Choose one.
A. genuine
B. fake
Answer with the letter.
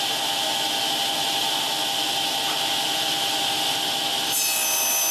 A